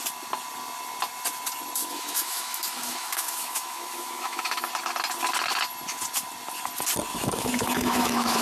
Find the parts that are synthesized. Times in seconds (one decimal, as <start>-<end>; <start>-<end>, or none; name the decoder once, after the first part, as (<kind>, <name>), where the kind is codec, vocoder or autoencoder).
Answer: 1.8-4.7 (autoencoder, DAC-VAE); 7.1-8.4